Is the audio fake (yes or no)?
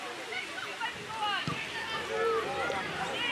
no